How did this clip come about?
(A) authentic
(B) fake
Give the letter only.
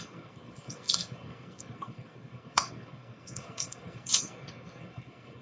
B